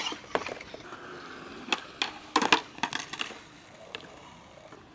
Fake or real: real